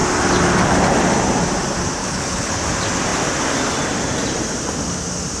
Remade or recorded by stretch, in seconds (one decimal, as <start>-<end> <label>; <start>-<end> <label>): 0.0-2.0 recorded; 2.0-2.6 remade; 2.6-5.4 recorded